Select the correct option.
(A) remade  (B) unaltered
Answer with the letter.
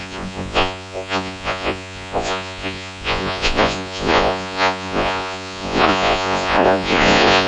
A